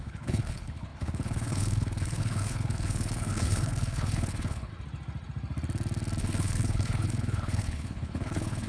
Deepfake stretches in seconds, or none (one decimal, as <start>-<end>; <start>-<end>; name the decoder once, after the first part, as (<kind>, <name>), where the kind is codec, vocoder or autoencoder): 0.0-4.7 (codec, HILCodec); 6.2-8.7